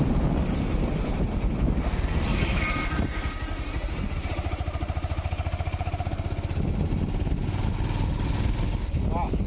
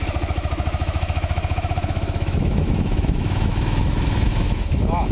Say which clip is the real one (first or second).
first